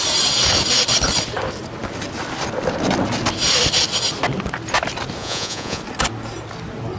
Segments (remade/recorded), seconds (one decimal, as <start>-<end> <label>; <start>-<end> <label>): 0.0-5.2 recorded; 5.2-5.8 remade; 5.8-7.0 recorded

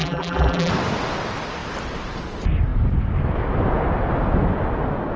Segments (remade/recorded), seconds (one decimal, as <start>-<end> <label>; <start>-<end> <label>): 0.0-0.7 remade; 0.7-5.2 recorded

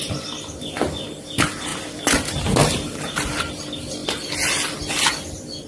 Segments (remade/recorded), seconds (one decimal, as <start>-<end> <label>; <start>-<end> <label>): 0.0-5.7 recorded